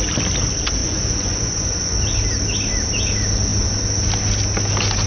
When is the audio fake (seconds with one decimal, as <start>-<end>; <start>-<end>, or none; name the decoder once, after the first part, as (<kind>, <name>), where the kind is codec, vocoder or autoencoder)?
0.8-2.0 (vocoder, Vocos)